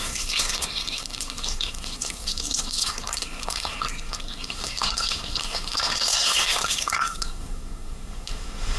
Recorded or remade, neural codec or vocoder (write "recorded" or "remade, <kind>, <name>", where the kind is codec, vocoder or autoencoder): remade, codec, SNAC